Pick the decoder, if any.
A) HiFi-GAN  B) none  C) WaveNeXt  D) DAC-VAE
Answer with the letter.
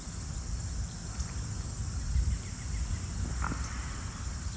B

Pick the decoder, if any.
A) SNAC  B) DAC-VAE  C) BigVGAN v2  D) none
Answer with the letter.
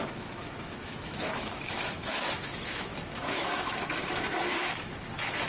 B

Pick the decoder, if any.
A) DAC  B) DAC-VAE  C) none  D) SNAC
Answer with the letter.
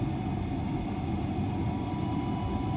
C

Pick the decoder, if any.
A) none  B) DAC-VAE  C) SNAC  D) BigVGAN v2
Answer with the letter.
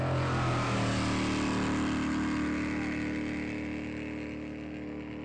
A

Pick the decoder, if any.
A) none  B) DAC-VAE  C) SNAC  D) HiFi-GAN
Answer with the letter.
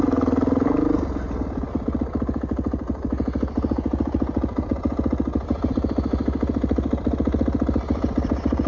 A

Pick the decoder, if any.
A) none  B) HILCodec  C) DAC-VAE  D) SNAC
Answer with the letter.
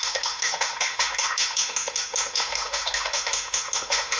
C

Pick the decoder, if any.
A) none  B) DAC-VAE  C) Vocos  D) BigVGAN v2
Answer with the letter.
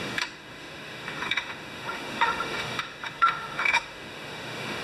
B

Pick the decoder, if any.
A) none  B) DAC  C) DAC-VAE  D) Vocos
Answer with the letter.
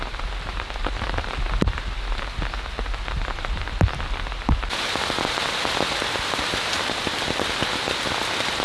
A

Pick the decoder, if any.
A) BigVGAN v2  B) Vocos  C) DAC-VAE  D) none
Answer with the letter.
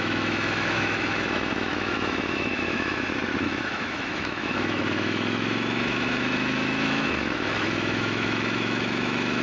C